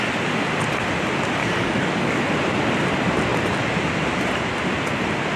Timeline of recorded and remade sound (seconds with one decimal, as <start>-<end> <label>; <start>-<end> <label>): 0.0-1.4 recorded; 1.4-2.2 remade; 2.2-5.4 recorded